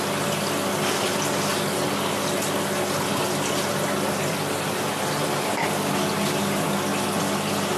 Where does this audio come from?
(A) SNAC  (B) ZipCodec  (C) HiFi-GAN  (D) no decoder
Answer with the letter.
D